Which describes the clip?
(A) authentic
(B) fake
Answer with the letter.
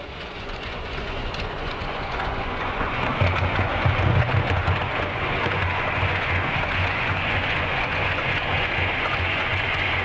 B